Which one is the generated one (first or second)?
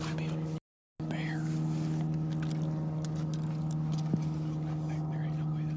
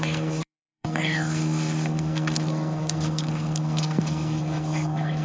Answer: second